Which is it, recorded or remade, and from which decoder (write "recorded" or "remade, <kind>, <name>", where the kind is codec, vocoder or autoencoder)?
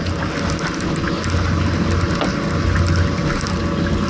recorded